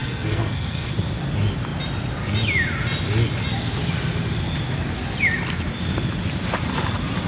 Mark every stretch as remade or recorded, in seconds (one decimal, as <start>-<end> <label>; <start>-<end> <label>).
0.0-0.9 remade; 0.9-7.3 recorded